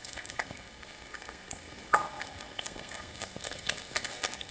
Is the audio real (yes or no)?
no